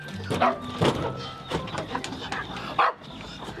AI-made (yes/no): no